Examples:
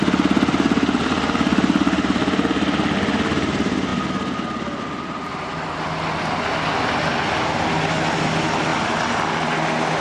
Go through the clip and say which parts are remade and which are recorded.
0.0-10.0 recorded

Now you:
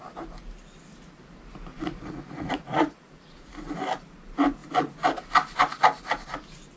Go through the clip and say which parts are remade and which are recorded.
0.0-1.7 recorded; 1.7-3.5 remade; 3.5-6.8 recorded